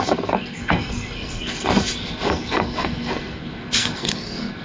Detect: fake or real fake